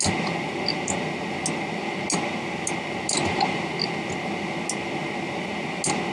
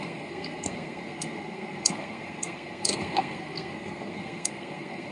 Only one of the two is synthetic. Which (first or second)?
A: second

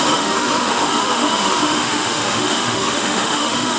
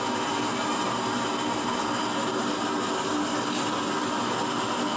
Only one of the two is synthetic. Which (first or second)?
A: first